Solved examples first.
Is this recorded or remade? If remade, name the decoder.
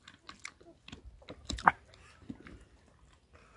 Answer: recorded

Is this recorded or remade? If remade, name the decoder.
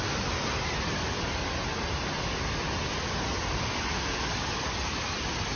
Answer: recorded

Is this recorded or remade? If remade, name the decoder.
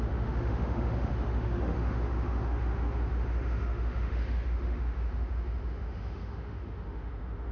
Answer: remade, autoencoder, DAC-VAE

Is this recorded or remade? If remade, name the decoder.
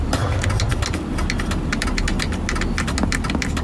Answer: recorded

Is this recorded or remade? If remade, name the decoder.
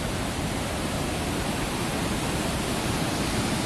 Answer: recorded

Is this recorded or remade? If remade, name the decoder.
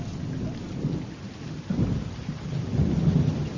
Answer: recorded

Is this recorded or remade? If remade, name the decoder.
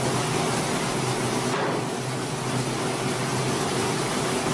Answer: recorded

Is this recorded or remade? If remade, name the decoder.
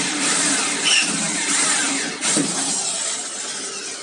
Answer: recorded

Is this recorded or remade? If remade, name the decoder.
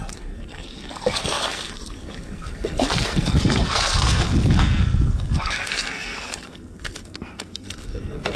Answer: remade, codec, SNAC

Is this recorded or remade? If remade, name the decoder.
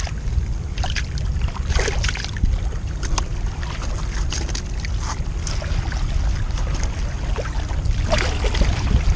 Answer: recorded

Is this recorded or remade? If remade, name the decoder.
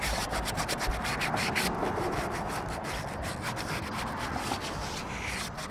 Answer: recorded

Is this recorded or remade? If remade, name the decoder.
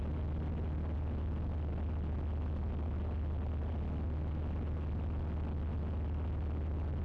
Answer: recorded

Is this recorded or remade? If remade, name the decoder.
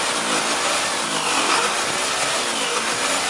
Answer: recorded